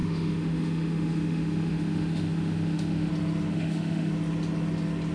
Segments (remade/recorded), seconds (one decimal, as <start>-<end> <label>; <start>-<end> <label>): 0.0-3.1 remade; 3.1-3.5 recorded; 3.5-4.1 remade; 4.1-5.1 recorded